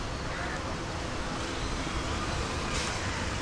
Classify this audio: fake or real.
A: real